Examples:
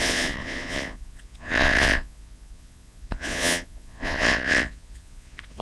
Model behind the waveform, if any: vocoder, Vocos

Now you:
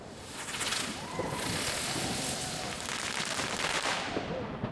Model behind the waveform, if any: none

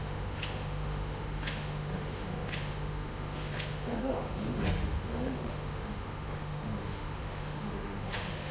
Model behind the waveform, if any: autoencoder, DAC-VAE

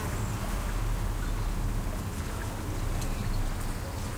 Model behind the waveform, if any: none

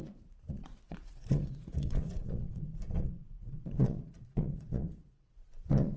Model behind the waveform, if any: vocoder, Vocos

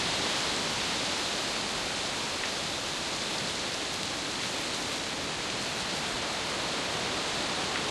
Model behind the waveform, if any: none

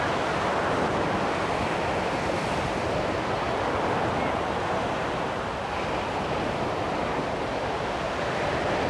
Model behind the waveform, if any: none